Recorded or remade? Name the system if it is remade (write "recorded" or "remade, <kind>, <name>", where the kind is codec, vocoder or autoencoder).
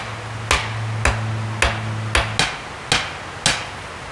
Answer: recorded